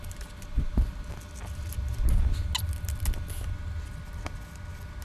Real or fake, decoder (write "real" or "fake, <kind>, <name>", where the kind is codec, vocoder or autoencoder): real